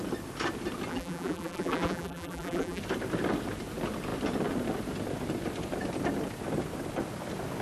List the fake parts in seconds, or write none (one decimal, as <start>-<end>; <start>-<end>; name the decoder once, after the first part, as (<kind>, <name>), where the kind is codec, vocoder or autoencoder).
0.9-2.8 (vocoder, BigVGAN v2)